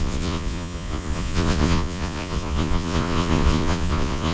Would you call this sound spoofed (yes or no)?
yes